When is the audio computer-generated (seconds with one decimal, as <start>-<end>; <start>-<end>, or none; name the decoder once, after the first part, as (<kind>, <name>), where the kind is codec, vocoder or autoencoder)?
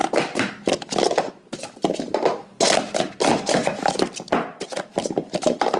none